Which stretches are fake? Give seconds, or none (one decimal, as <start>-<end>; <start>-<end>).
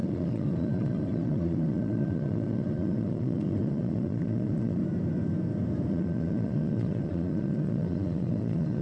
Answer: 0.0-4.8; 5.9-8.8